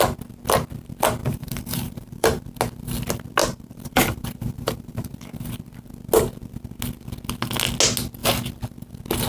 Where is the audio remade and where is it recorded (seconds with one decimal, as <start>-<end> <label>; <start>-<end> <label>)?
0.0-1.2 recorded; 1.2-2.4 remade; 2.4-3.4 recorded; 3.4-5.2 remade; 5.2-9.3 recorded